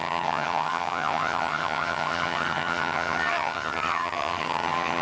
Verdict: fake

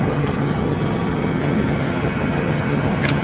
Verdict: fake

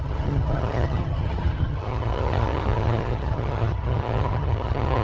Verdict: fake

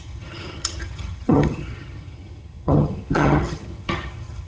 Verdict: fake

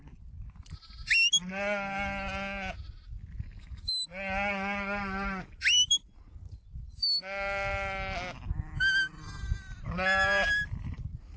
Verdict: real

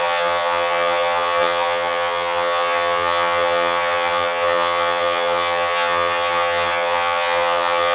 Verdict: fake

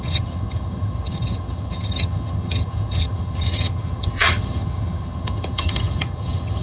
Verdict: fake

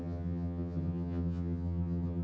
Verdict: fake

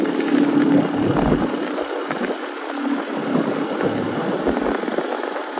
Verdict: real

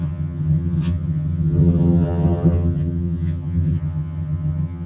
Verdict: fake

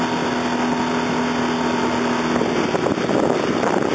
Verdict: real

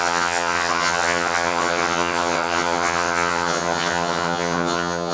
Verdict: fake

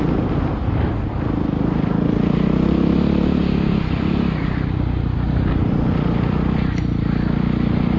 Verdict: real